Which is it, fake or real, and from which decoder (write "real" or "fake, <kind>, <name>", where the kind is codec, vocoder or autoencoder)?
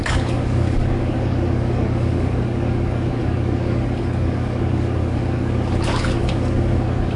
fake, codec, DAC